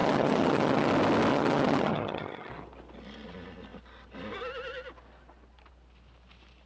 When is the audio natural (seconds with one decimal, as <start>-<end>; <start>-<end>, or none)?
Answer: 0.9-1.3; 2.5-6.7